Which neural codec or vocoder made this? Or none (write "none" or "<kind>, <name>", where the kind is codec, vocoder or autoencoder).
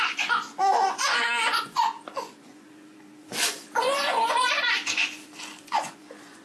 vocoder, Vocos